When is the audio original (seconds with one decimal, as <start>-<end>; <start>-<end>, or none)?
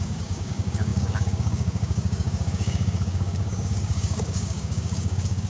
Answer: none